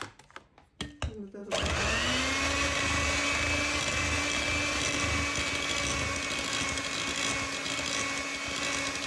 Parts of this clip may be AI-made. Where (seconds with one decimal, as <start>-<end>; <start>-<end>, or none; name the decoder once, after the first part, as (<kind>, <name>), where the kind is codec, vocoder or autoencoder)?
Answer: none